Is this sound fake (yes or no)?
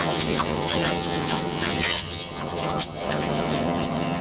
yes